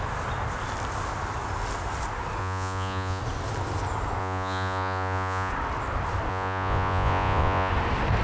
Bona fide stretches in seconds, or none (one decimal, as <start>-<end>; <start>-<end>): 0.0-2.4; 3.2-4.2; 5.5-6.3; 7.7-8.2